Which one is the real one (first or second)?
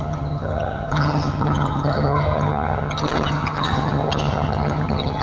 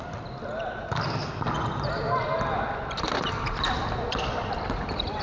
second